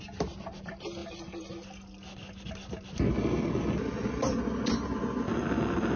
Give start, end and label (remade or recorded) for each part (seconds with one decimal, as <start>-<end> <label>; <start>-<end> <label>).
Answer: 0.0-6.0 recorded